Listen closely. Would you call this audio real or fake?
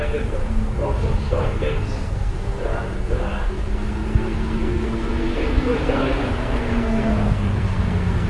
fake